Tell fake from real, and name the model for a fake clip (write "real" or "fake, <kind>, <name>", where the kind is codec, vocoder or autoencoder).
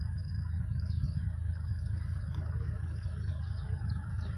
fake, codec, DAC